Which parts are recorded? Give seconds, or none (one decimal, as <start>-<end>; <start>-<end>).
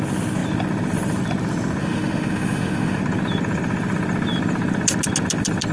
0.0-1.8; 3.0-5.7